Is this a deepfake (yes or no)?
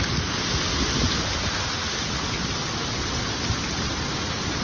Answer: no